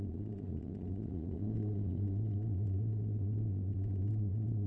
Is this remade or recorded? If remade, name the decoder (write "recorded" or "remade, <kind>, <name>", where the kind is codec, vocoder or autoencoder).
remade, vocoder, Vocos